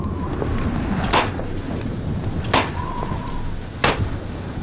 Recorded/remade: recorded